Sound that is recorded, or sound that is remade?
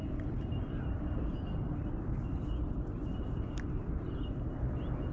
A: recorded